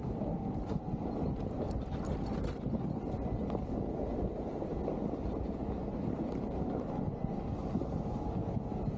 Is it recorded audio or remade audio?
recorded